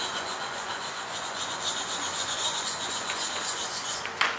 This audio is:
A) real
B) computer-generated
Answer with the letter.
B